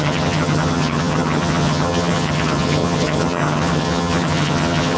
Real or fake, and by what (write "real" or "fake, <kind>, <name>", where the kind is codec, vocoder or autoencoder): fake, vocoder, HiFi-GAN